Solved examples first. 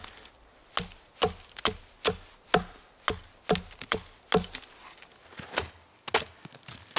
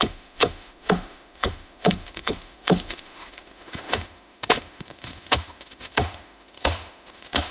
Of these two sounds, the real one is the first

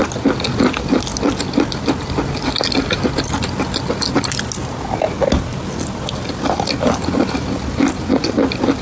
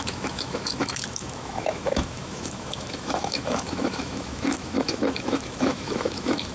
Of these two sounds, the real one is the first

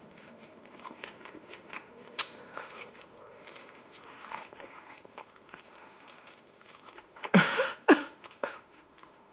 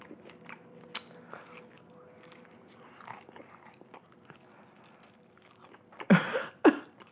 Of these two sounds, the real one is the second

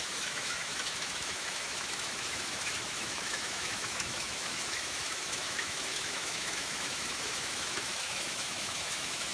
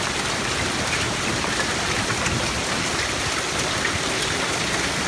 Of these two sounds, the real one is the second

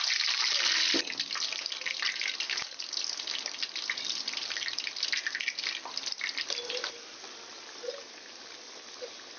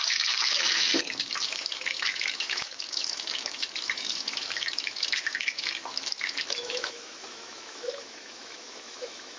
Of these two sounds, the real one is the first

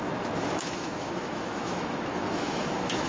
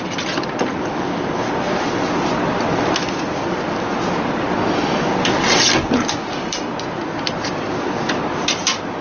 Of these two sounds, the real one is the second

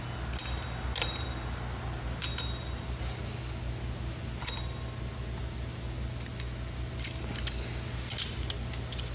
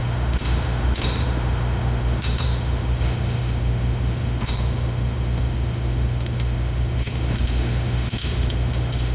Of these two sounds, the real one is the first